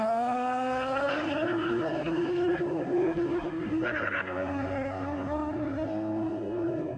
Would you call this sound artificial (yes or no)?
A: yes